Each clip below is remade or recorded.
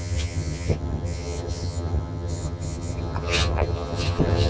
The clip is remade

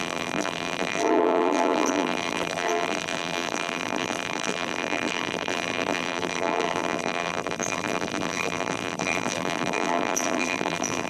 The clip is remade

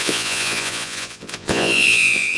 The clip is remade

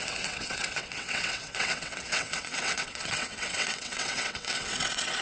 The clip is remade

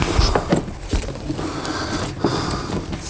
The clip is recorded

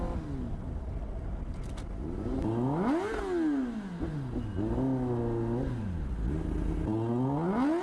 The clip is recorded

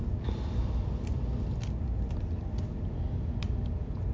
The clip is recorded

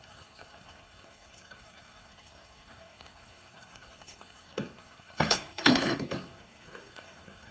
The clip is remade